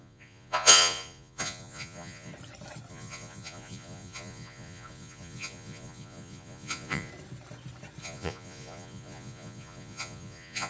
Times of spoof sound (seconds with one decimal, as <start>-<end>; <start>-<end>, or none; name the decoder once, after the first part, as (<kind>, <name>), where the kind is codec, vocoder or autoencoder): 0.0-2.3 (vocoder, Vocos); 2.9-7.1; 8.0-10.7